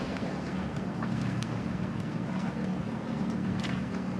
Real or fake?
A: fake